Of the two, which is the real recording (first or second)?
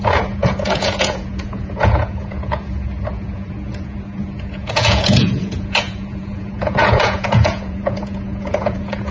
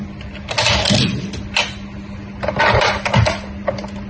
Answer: second